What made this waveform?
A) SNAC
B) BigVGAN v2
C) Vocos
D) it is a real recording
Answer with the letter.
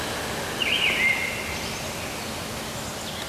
D